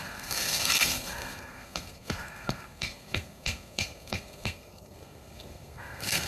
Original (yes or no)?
no